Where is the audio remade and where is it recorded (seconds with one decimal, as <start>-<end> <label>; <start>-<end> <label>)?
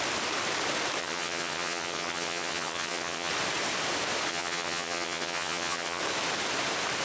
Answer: 0.0-1.0 recorded; 1.0-3.3 remade; 3.3-4.3 recorded; 4.3-6.0 remade; 6.0-7.0 recorded